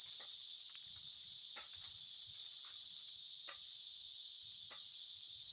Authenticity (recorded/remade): recorded